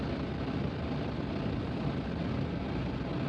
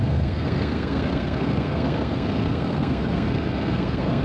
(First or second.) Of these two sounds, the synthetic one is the second